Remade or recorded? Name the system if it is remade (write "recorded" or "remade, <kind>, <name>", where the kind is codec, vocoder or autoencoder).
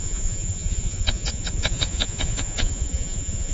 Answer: remade, vocoder, Vocos